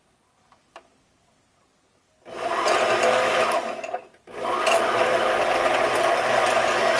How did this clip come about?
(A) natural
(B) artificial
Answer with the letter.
A